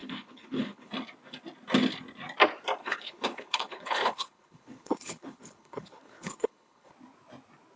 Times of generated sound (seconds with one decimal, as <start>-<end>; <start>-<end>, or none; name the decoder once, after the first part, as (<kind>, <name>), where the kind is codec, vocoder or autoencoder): 0.0-0.9 (codec, HILCodec); 2.8-6.9